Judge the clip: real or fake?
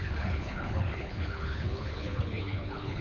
fake